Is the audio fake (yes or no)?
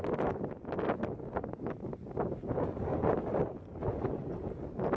no